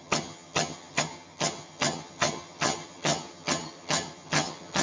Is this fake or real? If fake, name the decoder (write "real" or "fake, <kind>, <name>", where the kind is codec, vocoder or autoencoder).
fake, vocoder, HiFi-GAN